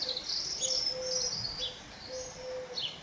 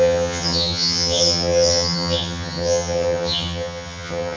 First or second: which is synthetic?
second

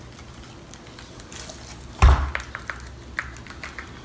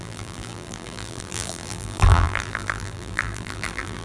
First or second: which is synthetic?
second